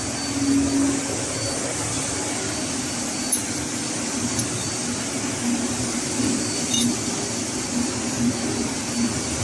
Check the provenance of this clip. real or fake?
real